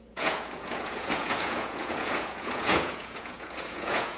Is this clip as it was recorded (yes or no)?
no